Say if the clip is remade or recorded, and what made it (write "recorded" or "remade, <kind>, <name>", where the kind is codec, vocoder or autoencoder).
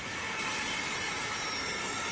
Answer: recorded